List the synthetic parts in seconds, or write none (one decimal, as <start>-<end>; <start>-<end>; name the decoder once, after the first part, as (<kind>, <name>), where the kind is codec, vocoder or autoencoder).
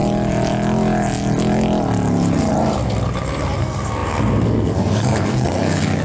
3.6-6.0 (codec, SNAC)